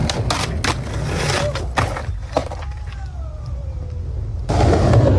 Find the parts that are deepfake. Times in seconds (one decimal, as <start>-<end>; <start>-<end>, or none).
none